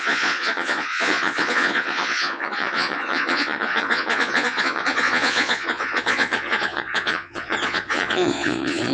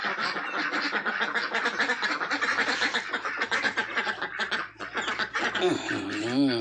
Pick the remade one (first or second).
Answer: first